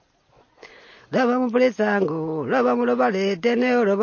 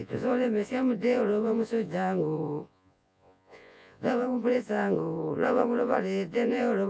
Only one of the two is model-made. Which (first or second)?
second